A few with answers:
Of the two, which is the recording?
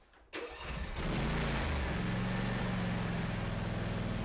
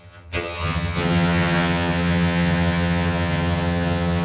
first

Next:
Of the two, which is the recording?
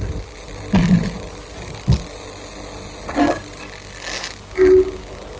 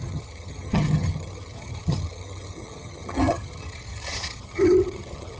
first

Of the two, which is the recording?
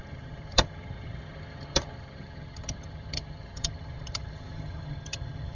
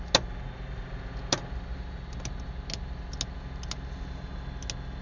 second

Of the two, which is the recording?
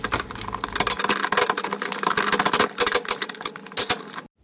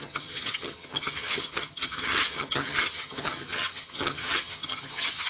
first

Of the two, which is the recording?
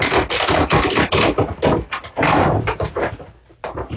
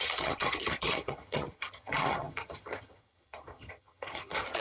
first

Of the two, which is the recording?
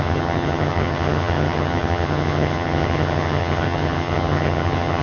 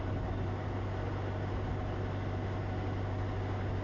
second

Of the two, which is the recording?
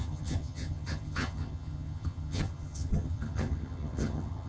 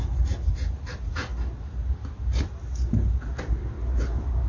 second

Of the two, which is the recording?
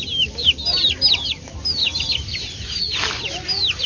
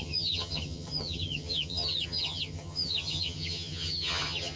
first